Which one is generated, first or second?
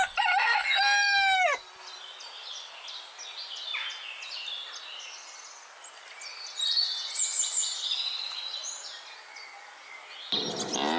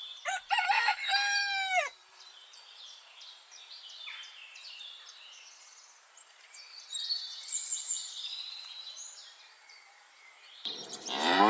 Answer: second